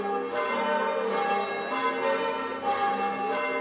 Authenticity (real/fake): real